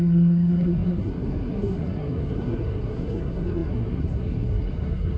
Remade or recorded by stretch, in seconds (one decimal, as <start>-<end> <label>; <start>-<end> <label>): 0.0-5.2 remade